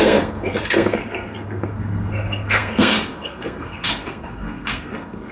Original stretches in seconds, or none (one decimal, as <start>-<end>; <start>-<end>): none